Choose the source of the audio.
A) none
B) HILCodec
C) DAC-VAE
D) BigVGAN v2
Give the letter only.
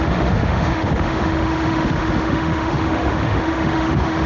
C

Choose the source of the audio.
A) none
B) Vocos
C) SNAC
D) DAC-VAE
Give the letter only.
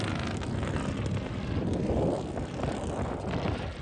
A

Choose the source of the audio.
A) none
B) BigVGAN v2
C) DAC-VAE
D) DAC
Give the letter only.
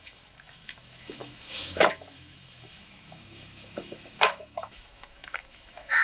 C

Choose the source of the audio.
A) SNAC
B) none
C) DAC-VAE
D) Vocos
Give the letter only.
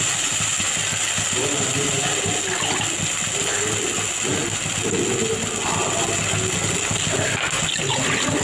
B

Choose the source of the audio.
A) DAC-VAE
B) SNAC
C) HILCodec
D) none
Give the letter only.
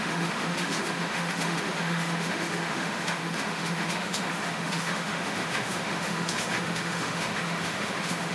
A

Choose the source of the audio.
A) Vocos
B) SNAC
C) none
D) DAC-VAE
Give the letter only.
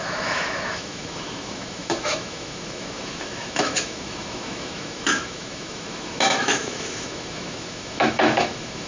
D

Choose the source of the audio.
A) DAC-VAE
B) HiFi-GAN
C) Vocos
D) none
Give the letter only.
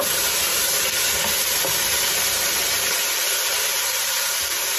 D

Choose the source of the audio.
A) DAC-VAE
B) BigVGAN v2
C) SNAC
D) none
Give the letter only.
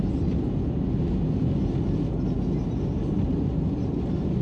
D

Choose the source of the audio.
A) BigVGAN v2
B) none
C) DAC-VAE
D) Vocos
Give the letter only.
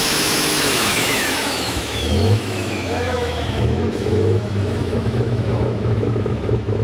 C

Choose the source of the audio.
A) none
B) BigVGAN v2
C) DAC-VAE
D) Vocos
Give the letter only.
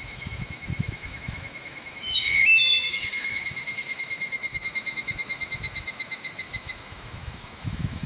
C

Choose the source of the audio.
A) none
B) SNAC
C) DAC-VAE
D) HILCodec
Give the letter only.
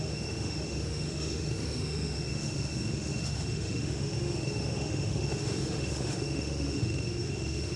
C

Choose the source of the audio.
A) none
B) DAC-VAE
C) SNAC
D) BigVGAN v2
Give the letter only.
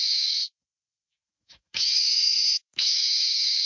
B